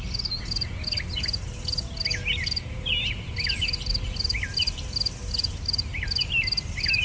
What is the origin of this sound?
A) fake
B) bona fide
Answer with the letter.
B